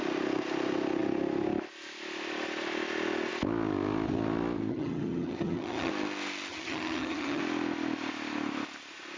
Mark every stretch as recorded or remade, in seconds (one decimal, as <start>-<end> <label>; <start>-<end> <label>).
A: 0.0-4.7 recorded; 4.7-5.9 remade; 5.9-6.5 recorded; 6.5-7.4 remade; 7.4-9.2 recorded